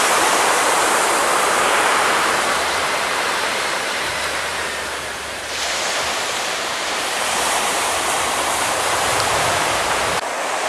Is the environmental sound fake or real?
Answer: fake